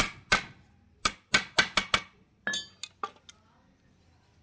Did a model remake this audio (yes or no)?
no